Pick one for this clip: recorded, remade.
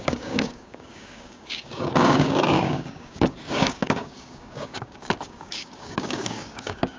remade